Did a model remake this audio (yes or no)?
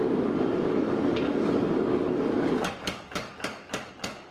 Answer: yes